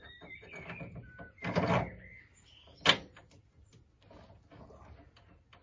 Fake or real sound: real